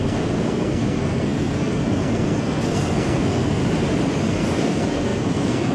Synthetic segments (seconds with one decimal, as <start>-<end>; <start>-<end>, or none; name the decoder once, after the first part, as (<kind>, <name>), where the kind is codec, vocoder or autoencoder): 0.0-3.6 (codec, SNAC); 4.2-5.7